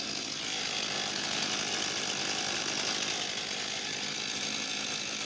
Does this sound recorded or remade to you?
recorded